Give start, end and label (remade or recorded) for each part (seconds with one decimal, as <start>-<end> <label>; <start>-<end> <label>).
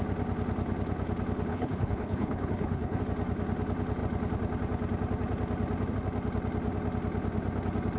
0.0-1.5 recorded; 1.5-3.0 remade; 3.0-8.0 recorded